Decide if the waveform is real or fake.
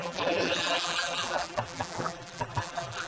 fake